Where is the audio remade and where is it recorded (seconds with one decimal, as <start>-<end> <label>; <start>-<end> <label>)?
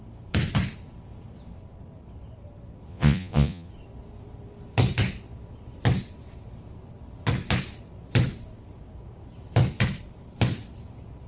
0.0-2.9 recorded; 2.9-3.7 remade; 3.7-11.3 recorded